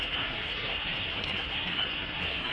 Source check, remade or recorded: remade